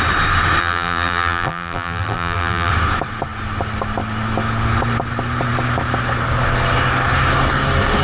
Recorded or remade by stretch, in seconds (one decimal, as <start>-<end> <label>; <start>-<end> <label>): 0.0-0.6 recorded; 0.6-2.7 remade; 2.7-8.0 recorded